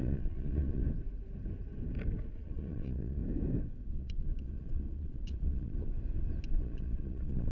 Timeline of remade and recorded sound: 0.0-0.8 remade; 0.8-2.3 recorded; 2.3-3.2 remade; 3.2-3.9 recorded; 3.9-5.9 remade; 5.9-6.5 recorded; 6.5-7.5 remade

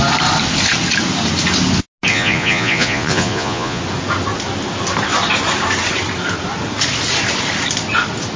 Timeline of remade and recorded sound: 0.0-2.1 recorded; 2.1-3.8 remade; 3.8-8.4 recorded